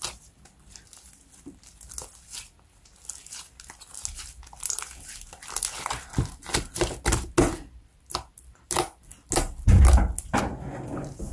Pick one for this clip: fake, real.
real